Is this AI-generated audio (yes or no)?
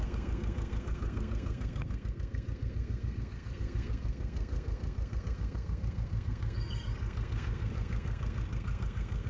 yes